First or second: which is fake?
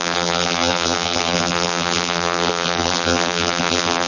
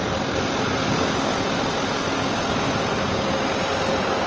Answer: first